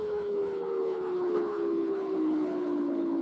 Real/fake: fake